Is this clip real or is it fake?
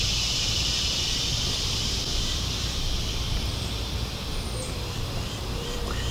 fake